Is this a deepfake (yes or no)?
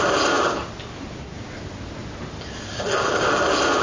no